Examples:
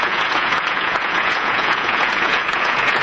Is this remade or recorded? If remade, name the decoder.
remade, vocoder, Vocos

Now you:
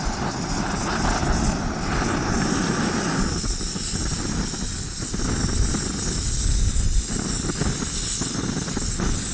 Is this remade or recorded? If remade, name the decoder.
recorded